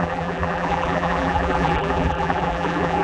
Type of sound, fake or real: fake